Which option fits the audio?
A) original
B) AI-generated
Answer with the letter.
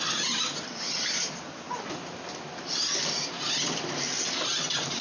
A